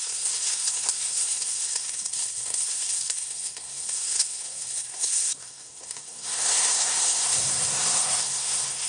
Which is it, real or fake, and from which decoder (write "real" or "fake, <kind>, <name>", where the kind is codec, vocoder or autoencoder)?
fake, codec, SNAC